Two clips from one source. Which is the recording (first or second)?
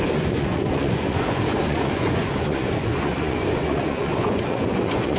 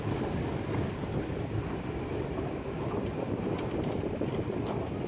second